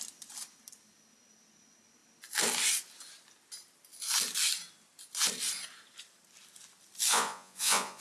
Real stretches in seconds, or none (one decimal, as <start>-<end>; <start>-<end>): 0.0-7.1